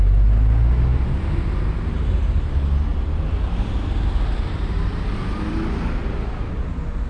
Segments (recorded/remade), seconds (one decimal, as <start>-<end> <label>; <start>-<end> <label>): 0.0-0.9 recorded; 0.9-1.6 remade; 1.6-2.9 recorded; 2.9-6.5 remade; 6.5-7.1 recorded